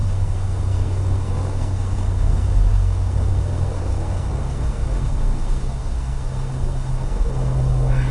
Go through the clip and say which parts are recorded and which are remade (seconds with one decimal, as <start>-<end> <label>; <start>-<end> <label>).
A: 0.0-8.1 remade